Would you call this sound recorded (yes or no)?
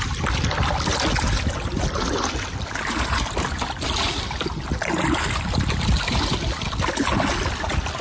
yes